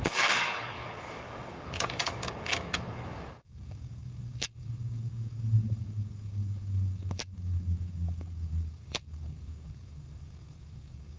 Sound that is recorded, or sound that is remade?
remade